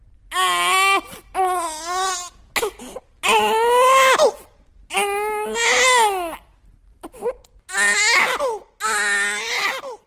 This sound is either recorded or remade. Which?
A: recorded